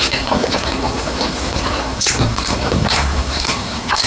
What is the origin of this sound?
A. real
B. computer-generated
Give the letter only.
B